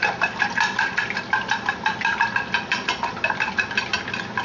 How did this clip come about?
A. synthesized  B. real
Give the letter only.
B